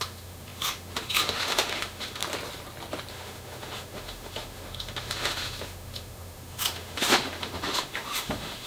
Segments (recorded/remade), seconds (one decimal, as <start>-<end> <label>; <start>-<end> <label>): 0.0-2.2 remade; 2.2-3.1 recorded; 3.1-8.7 remade